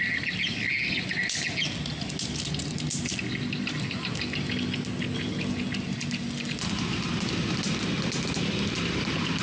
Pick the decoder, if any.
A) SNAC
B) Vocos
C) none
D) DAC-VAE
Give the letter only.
C